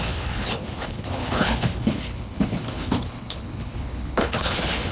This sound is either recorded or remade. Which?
remade